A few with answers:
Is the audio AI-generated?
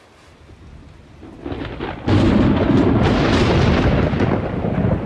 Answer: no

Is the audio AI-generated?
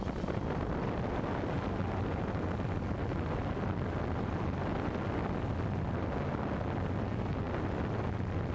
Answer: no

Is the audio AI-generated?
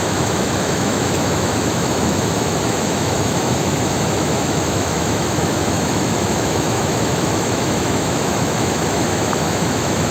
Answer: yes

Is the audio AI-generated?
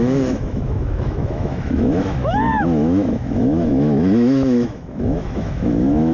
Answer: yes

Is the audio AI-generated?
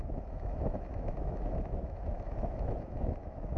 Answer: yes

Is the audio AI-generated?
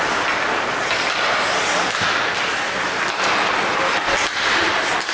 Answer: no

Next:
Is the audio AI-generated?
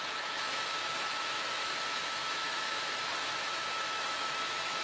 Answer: yes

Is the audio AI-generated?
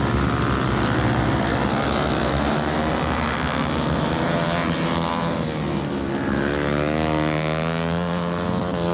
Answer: no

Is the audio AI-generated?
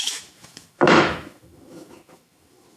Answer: yes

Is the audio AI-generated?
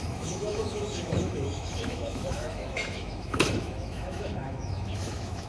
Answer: yes